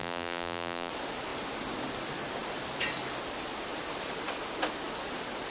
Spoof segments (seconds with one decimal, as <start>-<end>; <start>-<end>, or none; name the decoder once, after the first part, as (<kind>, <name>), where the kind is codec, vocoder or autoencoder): 0.0-0.9 (vocoder, BigVGAN v2)